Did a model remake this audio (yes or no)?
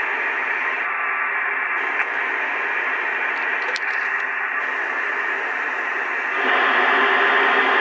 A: no